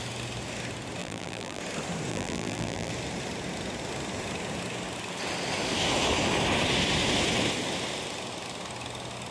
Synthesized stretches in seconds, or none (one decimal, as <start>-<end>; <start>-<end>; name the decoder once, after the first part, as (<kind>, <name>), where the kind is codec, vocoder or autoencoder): 1.0-1.6 (vocoder, BigVGAN v2); 2.1-2.9